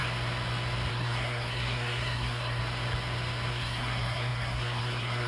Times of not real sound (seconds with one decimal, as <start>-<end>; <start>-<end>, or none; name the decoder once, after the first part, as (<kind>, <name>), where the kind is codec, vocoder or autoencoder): 0.9-2.6 (codec, SNAC); 3.5-5.3